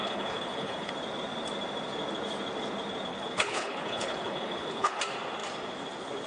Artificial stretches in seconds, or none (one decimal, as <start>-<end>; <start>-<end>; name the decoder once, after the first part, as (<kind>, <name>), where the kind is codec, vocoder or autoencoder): 0.0-0.9 (codec, HILCodec); 3.1-5.0

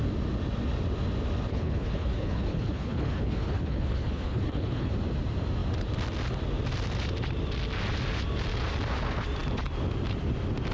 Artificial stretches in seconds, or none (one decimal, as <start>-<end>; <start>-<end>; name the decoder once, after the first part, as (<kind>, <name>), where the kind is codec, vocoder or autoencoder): 1.5-4.9 (codec, HILCodec)

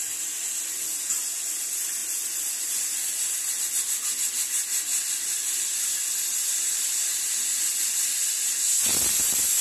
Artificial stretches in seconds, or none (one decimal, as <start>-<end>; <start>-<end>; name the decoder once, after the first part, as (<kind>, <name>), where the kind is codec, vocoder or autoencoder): none

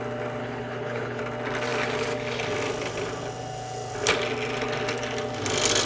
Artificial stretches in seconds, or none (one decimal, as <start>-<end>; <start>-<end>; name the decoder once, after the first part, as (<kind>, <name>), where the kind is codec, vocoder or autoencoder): 0.4-1.2 (codec, HILCodec)